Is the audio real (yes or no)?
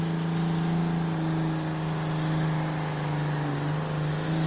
yes